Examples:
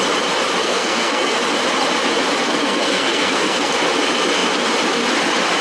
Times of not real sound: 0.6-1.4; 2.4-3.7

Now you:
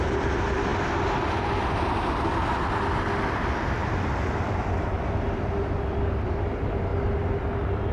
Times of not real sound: none